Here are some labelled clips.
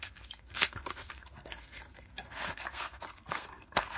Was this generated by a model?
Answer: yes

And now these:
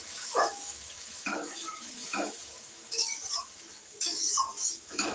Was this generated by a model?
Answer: yes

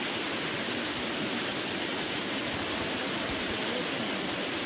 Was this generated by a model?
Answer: no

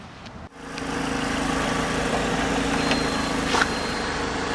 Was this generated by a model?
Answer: no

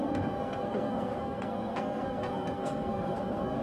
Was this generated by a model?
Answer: yes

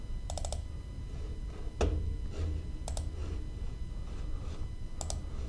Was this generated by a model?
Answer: no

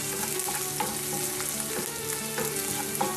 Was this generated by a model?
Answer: no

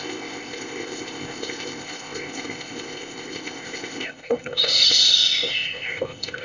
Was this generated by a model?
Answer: yes